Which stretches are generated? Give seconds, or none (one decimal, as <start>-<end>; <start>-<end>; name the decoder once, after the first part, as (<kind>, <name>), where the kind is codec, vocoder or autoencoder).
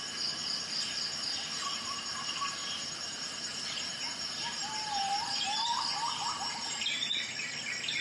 2.6-7.3 (vocoder, BigVGAN v2)